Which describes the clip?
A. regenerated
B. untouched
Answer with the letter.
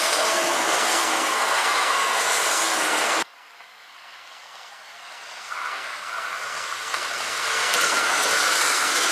A